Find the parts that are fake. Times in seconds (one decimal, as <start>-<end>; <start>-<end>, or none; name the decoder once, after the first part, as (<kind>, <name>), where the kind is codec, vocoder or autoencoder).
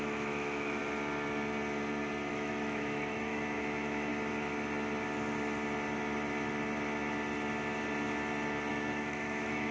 0.0-0.8 (autoencoder, DAC-VAE); 2.3-4.1; 8.7-9.7